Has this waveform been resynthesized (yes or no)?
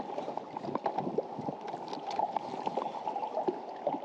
no